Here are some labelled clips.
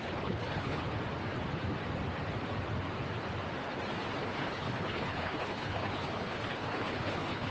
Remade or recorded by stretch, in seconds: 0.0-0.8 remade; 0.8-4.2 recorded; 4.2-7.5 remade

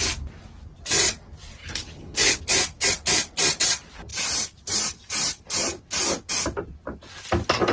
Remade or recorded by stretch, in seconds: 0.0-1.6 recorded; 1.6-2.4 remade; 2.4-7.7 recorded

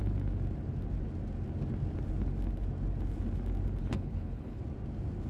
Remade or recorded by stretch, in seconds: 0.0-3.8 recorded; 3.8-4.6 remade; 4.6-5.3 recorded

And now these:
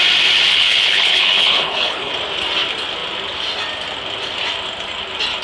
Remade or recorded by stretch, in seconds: 0.0-0.5 recorded; 0.5-2.1 remade; 2.1-5.4 recorded